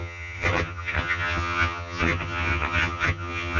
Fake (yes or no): yes